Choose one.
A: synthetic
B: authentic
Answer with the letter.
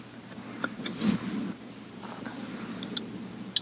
B